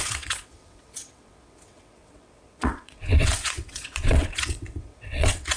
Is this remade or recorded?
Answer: remade